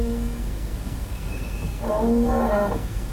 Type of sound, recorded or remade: remade